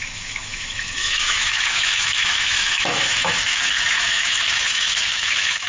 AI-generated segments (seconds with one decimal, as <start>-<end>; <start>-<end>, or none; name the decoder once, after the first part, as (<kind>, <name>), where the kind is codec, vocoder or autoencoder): 0.0-5.7 (autoencoder, DAC-VAE)